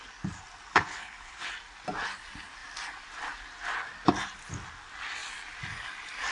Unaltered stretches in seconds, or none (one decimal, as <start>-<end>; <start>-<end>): 0.0-0.7; 1.5-6.3